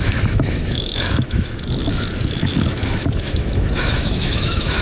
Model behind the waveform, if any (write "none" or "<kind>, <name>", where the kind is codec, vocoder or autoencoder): autoencoder, DAC-VAE